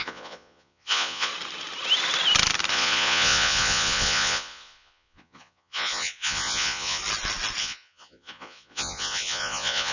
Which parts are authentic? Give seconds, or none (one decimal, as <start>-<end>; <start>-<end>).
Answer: 1.3-2.7; 7.0-7.6

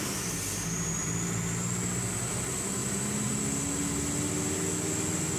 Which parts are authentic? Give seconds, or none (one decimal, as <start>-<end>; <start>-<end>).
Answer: 0.0-2.8; 3.3-5.4

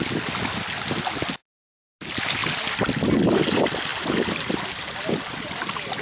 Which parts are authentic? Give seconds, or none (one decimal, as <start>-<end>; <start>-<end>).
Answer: 0.0-6.0

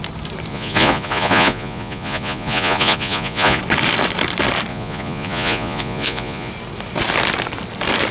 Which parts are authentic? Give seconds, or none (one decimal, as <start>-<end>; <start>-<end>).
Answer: 0.0-0.5; 3.6-4.7; 6.5-8.1

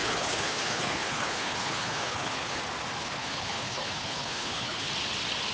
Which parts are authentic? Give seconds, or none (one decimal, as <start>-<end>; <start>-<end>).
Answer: 2.6-3.0; 4.9-5.5

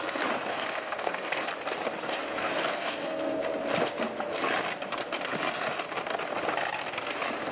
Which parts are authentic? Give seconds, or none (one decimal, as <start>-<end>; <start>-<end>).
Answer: 0.0-0.5; 1.5-2.4; 3.4-7.5

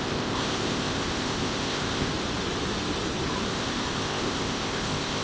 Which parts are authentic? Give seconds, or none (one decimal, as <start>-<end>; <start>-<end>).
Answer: 2.1-3.5